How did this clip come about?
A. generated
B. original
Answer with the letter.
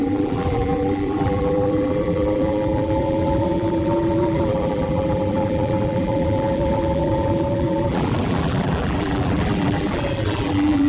A